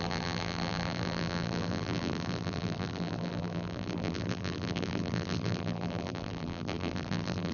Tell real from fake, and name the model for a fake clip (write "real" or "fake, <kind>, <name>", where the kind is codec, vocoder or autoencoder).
fake, vocoder, BigVGAN v2